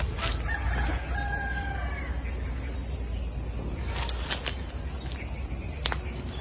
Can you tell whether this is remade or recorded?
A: recorded